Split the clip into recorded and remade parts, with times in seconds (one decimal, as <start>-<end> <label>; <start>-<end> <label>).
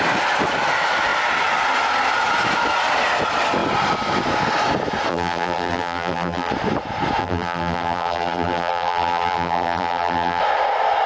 0.0-5.1 recorded; 5.1-6.5 remade; 6.5-7.2 recorded; 7.2-10.4 remade; 10.4-11.1 recorded